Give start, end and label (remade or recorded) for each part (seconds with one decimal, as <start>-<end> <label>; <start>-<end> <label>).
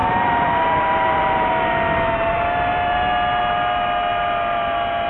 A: 0.0-1.5 remade; 1.5-5.1 recorded